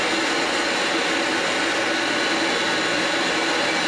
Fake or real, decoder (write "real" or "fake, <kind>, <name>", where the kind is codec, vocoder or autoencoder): real